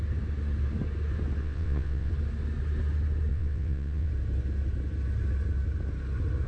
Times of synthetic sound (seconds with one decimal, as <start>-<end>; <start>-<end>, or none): 1.4-2.1; 3.3-4.1

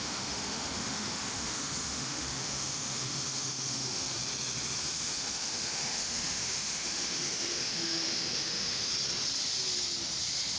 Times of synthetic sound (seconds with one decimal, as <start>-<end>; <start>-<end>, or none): 0.0-4.2; 4.8-8.9

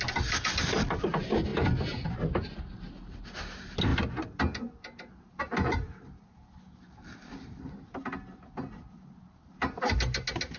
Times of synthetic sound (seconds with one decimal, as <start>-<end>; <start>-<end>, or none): none

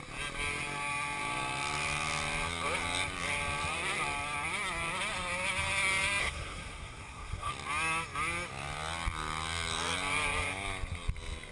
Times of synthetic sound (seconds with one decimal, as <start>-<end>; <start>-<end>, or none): 6.2-7.5

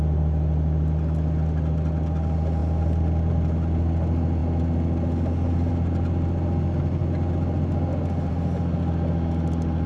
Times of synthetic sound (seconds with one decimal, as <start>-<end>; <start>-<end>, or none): none